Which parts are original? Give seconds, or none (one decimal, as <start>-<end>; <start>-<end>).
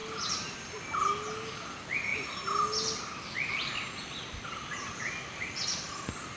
0.0-6.4